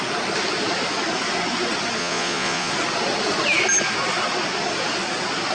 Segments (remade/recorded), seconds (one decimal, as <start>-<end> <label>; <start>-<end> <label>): 0.0-2.0 recorded; 2.0-2.7 remade; 2.7-5.5 recorded